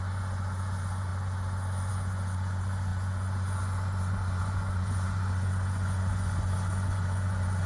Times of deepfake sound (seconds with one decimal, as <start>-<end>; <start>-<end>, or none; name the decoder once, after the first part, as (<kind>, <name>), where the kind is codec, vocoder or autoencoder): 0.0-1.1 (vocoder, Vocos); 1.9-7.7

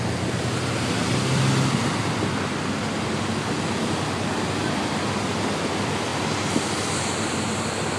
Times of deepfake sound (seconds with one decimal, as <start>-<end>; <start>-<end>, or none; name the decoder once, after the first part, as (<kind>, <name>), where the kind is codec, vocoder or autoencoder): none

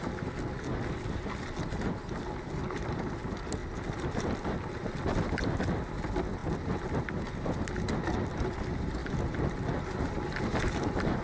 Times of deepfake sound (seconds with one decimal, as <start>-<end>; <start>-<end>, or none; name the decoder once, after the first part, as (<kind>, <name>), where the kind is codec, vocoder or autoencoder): 3.6-5.6 (vocoder, BigVGAN v2); 6.4-7.1